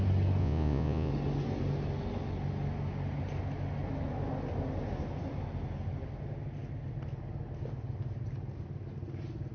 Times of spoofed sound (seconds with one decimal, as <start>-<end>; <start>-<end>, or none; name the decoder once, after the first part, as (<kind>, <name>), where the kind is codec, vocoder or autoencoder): 0.4-1.1 (vocoder, Vocos)